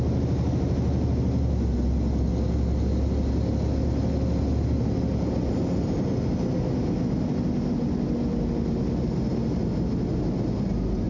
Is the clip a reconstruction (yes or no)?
no